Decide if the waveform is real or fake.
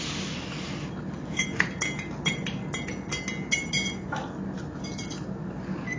real